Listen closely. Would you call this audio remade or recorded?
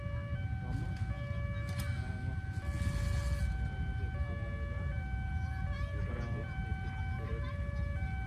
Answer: recorded